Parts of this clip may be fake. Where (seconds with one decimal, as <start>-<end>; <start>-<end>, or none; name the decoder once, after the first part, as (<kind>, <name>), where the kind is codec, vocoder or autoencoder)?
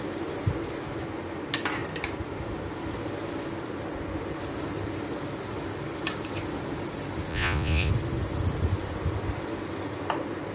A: 7.3-7.9 (vocoder, Vocos)